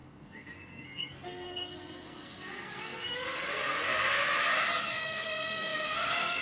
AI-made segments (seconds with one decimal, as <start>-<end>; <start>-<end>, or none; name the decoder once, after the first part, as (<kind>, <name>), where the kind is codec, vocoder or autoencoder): 0.0-4.2 (codec, SNAC); 4.9-6.4